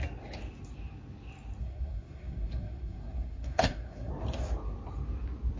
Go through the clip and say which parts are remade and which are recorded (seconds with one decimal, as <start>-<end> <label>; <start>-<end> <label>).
0.0-1.6 recorded; 1.6-4.1 remade; 4.1-5.6 recorded

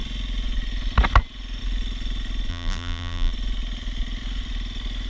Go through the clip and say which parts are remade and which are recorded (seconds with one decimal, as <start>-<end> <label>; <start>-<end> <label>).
0.0-2.5 recorded; 2.5-3.3 remade; 3.3-5.1 recorded